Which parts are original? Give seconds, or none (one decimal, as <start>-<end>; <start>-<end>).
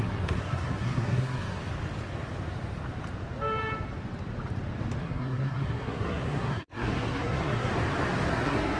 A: 1.6-5.0; 7.7-8.3